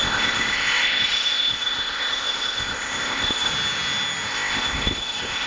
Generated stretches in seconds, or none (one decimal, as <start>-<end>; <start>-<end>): 0.0-3.5; 4.3-5.5